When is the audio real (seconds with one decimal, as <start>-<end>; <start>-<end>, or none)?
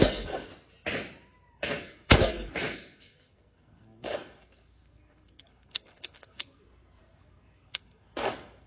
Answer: 0.5-1.5